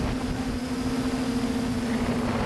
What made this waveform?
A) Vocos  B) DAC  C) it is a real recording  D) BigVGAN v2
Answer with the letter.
C